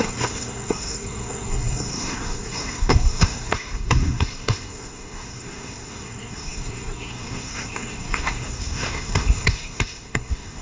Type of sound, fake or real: fake